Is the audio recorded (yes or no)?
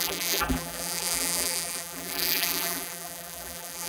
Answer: no